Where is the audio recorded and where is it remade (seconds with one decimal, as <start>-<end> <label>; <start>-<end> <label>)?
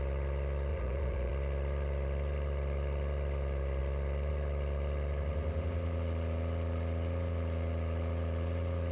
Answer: 0.0-0.7 recorded; 0.7-1.3 remade; 1.3-8.9 recorded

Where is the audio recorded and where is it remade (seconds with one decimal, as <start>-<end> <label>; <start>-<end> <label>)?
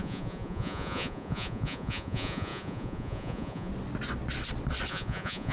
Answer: 0.0-3.7 remade; 3.7-4.9 recorded; 4.9-5.5 remade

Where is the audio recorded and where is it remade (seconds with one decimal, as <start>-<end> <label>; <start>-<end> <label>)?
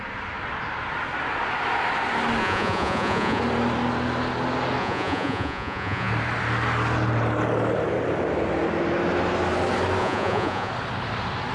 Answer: 0.0-2.4 recorded; 2.4-3.4 remade; 3.4-4.8 recorded; 4.8-6.1 remade; 6.1-10.0 recorded; 10.0-10.7 remade; 10.7-11.5 recorded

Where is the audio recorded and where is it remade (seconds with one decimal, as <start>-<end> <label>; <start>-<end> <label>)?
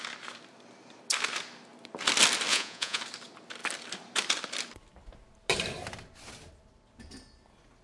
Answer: 0.0-2.5 recorded; 2.5-3.0 remade; 3.0-7.8 recorded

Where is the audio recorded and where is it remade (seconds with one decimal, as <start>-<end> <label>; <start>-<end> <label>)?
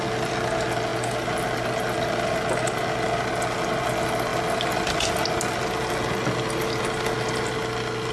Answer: 0.0-8.1 recorded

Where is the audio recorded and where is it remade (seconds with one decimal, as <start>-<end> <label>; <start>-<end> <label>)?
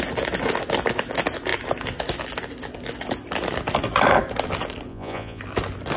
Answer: 0.0-4.9 recorded; 4.9-5.4 remade; 5.4-6.0 recorded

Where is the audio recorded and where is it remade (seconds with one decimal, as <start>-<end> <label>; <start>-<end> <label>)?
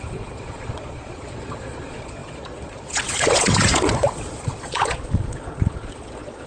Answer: 0.0-6.5 remade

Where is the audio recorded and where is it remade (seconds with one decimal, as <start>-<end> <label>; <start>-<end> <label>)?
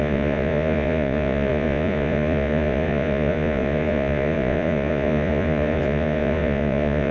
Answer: 0.0-7.1 remade